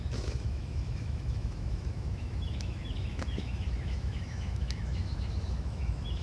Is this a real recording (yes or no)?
no